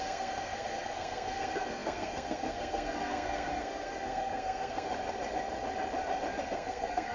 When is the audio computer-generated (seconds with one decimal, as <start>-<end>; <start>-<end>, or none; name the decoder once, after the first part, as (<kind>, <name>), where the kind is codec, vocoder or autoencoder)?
0.0-4.9 (codec, SNAC); 6.4-7.1